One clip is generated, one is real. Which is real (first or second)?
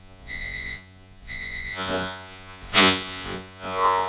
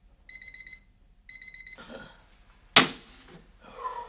second